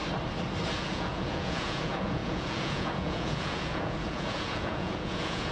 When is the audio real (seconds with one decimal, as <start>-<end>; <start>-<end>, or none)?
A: 0.0-0.7